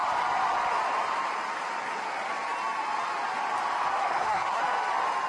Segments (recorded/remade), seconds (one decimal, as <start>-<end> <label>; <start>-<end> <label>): 0.0-3.9 recorded; 3.9-4.6 remade; 4.6-5.3 recorded